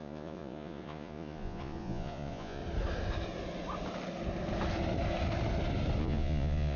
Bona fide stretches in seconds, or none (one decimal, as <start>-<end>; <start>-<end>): 2.6-6.0